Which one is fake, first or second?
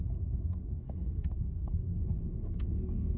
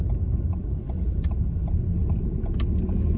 first